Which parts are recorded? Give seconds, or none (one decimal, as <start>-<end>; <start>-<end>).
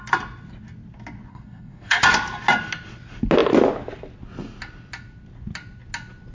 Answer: 0.0-1.3; 2.0-6.3